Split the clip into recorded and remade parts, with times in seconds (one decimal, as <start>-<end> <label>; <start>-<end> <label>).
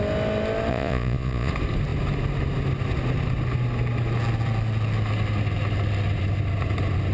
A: 0.0-0.7 recorded; 0.7-1.5 remade; 1.5-7.1 recorded